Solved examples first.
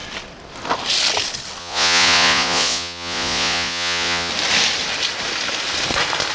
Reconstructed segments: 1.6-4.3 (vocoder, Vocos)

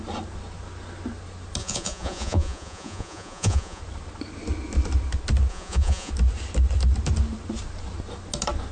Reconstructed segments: 1.6-3.8 (vocoder, Vocos); 5.5-6.1

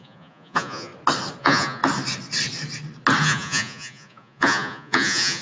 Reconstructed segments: 0.0-0.9 (vocoder, Vocos); 1.4-1.8; 3.2-5.4